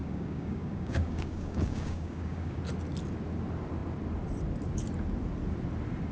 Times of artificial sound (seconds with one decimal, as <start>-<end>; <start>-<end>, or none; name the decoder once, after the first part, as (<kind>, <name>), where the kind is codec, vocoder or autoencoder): 0.0-2.6 (codec, DAC)